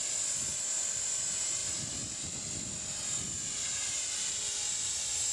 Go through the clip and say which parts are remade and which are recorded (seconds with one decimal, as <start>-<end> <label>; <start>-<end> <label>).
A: 0.0-5.3 recorded